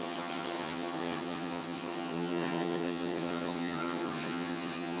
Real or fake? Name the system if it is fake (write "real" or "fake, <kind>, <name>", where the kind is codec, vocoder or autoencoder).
fake, vocoder, HiFi-GAN